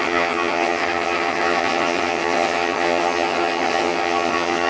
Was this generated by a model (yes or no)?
yes